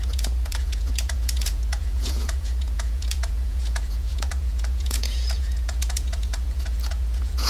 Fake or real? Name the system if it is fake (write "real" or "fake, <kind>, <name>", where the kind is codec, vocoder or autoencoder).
fake, vocoder, Vocos